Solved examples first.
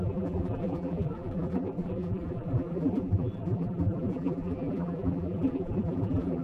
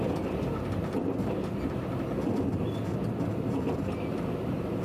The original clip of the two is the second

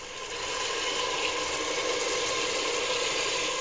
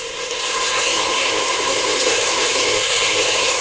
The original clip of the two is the first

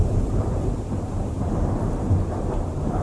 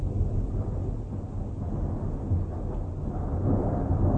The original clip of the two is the second